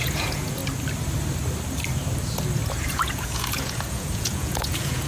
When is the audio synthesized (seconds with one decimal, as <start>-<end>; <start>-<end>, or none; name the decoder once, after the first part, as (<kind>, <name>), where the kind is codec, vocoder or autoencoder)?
0.0-0.6 (vocoder, Vocos); 2.8-5.1